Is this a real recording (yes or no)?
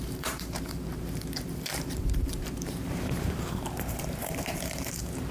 no